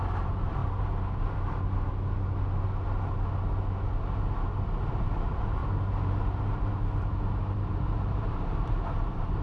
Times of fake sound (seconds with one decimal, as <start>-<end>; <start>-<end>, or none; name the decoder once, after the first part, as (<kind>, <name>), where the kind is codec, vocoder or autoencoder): 0.0-0.6 (vocoder, BigVGAN v2); 4.9-5.6; 6.2-9.4